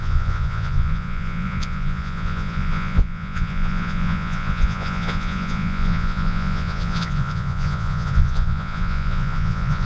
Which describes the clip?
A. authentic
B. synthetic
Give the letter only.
B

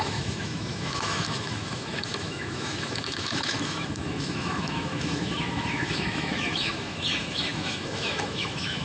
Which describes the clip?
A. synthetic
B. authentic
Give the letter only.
A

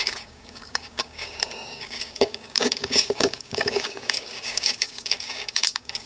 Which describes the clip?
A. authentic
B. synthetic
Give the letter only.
B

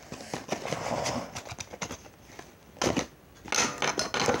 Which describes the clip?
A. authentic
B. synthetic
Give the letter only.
A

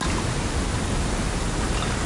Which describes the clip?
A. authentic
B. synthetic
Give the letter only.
A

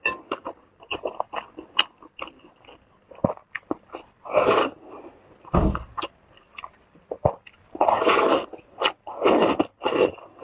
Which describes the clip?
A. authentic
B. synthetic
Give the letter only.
B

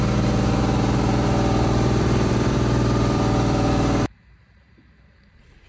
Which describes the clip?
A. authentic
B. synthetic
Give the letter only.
B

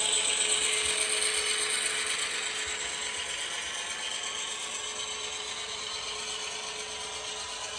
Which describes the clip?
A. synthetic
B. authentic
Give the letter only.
B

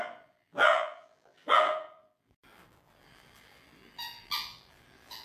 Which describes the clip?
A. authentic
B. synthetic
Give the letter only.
B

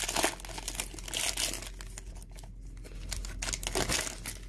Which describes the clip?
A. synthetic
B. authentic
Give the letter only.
B